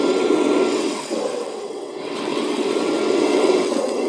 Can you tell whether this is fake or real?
fake